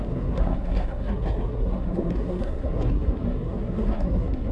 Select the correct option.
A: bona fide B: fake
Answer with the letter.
B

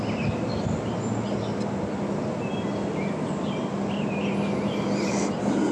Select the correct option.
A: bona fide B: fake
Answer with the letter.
A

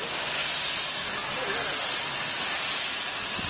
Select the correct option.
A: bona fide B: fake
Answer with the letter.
A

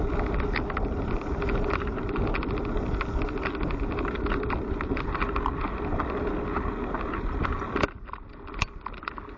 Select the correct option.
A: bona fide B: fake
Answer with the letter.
A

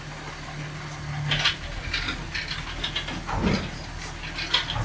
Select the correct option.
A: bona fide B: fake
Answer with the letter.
A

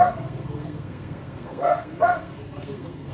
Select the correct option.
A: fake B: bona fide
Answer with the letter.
A